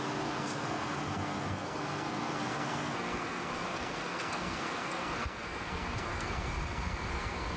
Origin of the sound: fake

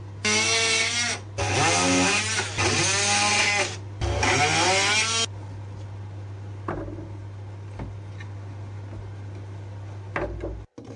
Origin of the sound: real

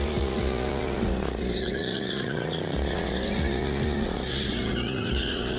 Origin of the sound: fake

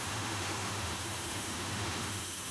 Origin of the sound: fake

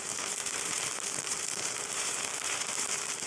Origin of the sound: fake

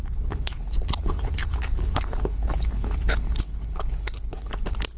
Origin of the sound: fake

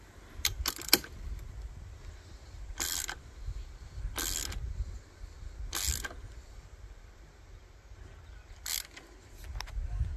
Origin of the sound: real